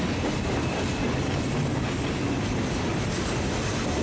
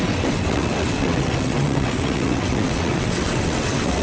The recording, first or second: first